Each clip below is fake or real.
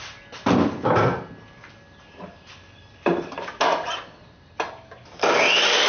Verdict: real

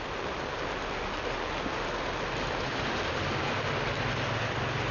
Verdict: real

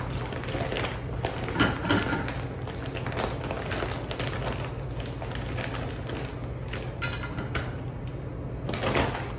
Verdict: real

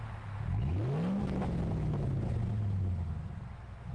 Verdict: real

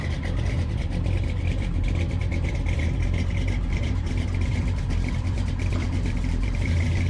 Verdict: fake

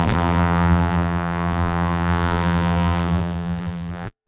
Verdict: fake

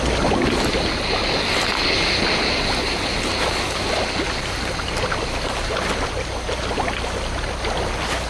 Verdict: real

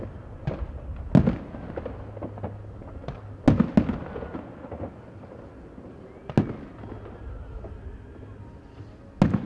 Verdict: real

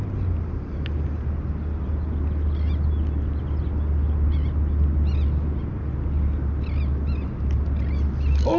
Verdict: real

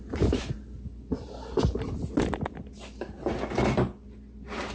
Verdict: real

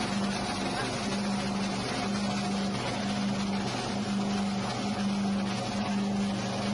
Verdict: real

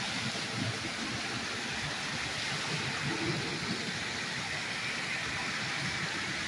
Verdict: real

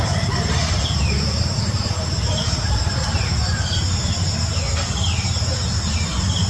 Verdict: fake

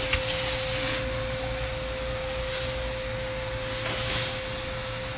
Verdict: real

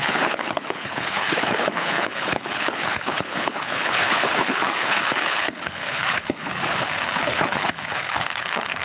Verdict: fake